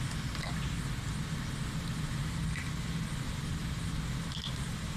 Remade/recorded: recorded